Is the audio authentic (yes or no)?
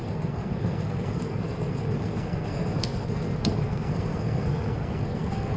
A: no